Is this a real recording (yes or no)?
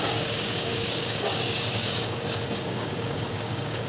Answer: no